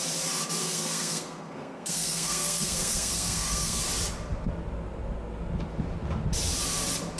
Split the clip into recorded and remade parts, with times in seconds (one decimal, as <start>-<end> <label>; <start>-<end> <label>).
0.0-0.6 recorded; 0.6-3.8 remade; 3.8-7.2 recorded